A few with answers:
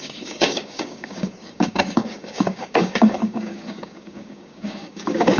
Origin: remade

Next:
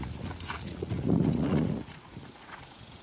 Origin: remade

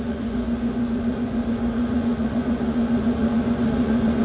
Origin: remade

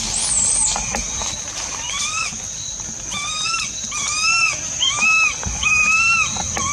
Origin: recorded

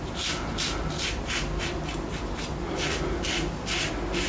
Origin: recorded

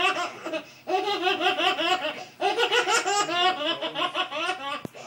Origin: recorded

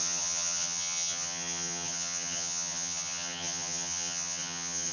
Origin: remade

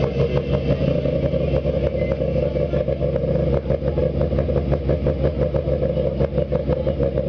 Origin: recorded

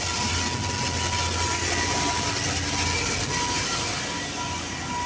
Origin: recorded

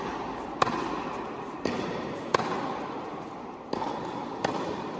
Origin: recorded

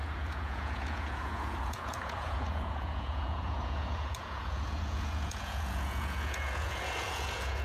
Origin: remade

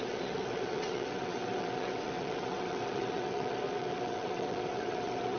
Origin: remade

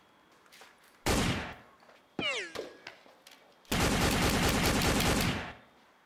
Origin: recorded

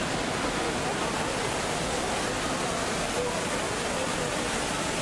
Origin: recorded